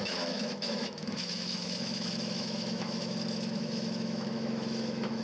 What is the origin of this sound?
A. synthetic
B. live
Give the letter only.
A